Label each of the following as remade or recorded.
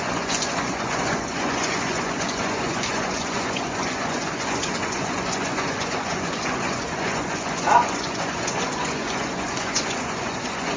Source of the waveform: remade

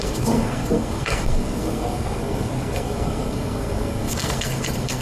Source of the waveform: remade